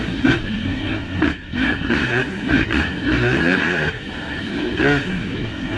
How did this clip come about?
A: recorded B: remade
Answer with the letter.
B